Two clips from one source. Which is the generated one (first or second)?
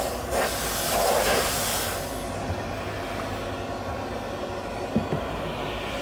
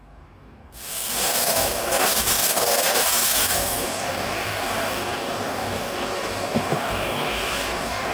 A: second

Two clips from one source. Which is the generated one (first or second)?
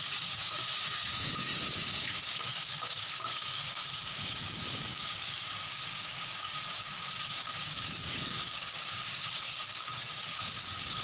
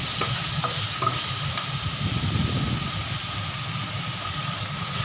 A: first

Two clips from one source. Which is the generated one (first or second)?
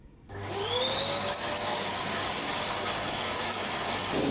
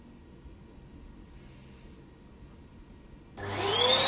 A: first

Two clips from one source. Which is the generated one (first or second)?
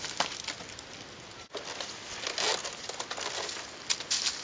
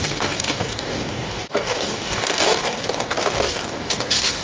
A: second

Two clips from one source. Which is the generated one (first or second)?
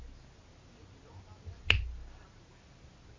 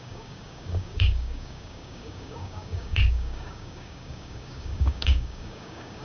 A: second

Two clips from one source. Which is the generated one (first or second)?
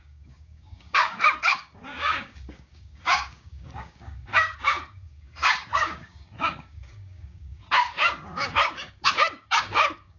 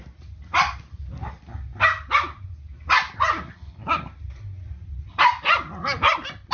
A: first